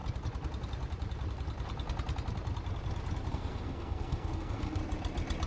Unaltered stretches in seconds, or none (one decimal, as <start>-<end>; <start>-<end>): 0.0-3.3; 4.8-5.5